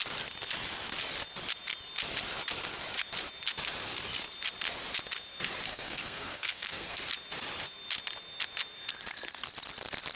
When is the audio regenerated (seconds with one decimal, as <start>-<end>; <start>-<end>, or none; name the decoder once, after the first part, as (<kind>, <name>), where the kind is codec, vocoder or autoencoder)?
5.7-7.0 (codec, SNAC)